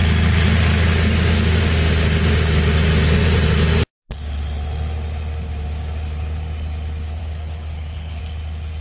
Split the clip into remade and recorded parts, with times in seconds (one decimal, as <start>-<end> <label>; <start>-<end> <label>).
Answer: 0.0-7.2 recorded; 7.2-8.2 remade; 8.2-8.8 recorded